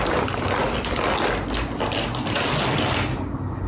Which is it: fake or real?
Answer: real